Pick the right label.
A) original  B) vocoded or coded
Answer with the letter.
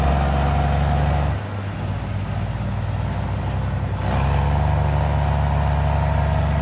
A